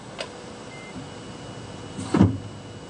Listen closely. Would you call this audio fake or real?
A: real